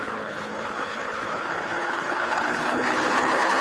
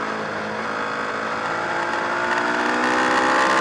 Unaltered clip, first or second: second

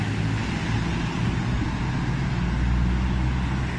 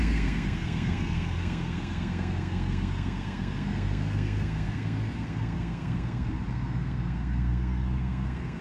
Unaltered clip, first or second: first